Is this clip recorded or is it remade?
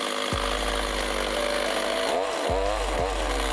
recorded